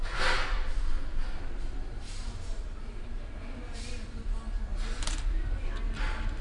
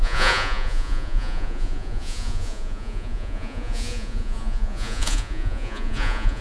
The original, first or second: first